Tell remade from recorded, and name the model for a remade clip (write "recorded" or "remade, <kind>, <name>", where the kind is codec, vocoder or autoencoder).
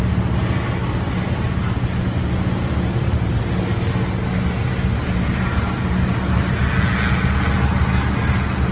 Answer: recorded